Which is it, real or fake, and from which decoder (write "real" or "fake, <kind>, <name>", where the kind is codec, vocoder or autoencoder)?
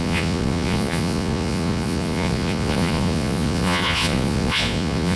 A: fake, vocoder, Vocos